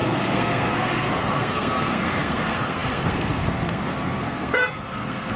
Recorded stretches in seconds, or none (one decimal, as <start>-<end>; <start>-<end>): none